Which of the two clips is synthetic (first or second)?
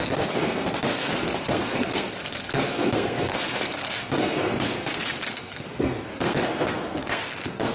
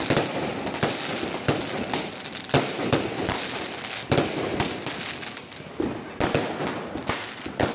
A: first